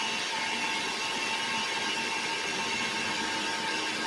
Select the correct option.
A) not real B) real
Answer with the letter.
B